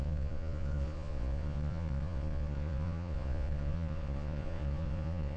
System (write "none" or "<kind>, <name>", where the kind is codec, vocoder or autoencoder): vocoder, Vocos